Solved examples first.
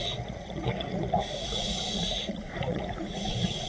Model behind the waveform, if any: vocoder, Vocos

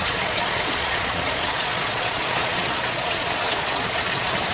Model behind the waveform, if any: vocoder, Vocos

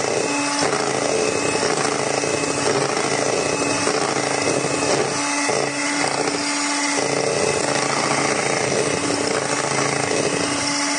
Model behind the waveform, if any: none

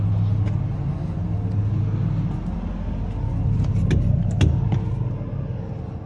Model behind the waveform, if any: none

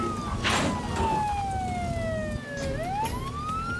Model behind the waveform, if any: none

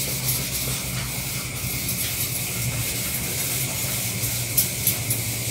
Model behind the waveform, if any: none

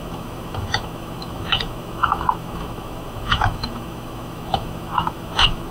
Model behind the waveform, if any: autoencoder, DAC-VAE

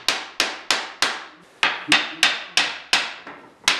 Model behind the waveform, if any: none